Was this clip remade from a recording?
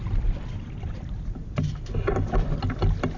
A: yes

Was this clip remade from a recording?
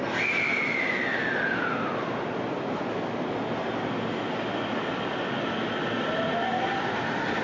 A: no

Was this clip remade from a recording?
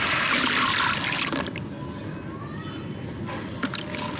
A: no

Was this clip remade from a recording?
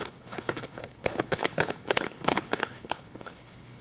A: yes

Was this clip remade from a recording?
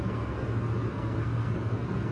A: yes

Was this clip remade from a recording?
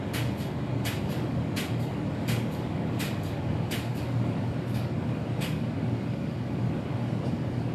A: yes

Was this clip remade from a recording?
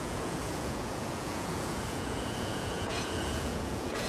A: yes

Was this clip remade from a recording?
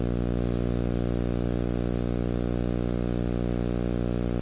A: no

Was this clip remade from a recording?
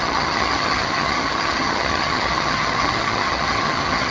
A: yes